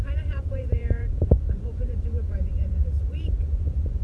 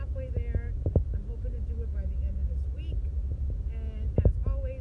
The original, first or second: second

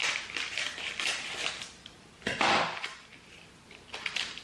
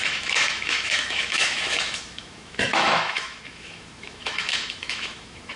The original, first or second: first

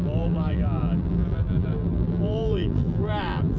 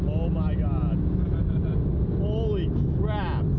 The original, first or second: second